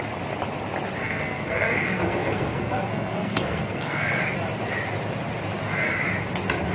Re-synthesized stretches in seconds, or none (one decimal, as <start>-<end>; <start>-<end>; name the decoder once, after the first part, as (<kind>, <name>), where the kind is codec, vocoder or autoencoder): 1.0-4.2 (codec, SNAC)